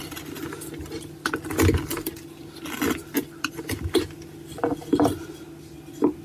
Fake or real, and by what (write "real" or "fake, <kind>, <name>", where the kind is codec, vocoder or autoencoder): real